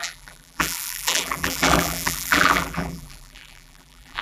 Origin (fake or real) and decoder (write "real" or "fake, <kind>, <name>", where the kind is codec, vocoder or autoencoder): fake, vocoder, BigVGAN v2